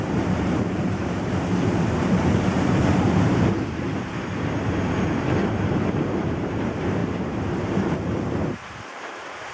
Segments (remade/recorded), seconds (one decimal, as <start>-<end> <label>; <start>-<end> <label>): 0.0-3.9 remade; 3.9-5.5 recorded; 5.5-9.5 remade